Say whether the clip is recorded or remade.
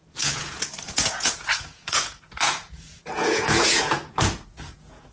remade